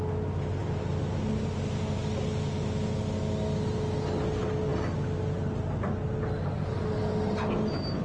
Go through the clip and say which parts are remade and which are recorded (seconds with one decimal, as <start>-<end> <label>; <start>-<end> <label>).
0.0-8.0 recorded